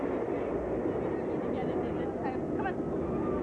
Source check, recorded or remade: recorded